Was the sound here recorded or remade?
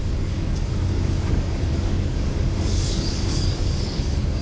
remade